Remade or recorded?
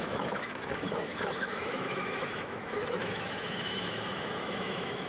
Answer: remade